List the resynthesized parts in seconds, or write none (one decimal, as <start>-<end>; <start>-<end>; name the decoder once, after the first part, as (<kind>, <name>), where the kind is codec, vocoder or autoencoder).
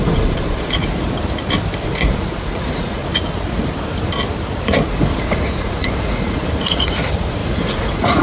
0.0-0.8 (vocoder, Vocos); 1.8-3.0; 4.6-8.2